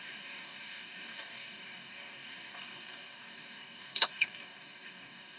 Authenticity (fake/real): fake